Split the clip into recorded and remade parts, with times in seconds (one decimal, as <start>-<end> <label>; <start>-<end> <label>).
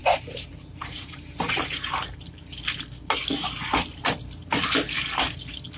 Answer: 0.0-1.9 remade; 1.9-5.8 recorded